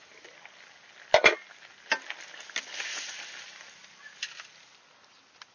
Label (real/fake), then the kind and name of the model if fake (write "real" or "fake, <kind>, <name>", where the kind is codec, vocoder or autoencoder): real